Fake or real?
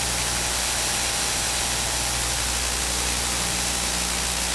real